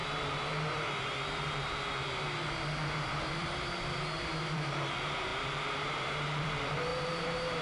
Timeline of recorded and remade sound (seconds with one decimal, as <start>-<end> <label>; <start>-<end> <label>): 0.0-7.6 remade